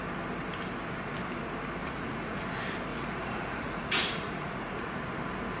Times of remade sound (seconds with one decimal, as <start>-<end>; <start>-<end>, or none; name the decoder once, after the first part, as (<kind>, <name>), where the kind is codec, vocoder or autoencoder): 1.8-2.4 (vocoder, Vocos); 2.9-5.1